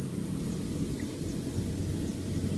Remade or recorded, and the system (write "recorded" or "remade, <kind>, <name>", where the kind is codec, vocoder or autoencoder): recorded